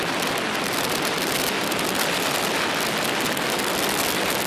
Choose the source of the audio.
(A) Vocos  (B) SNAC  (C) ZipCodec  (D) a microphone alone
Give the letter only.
D